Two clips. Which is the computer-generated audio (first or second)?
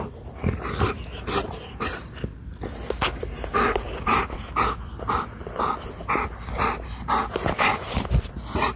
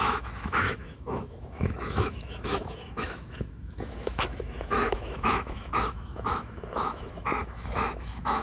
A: second